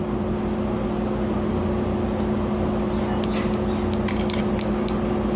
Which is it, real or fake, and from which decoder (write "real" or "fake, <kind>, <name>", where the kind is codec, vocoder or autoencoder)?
real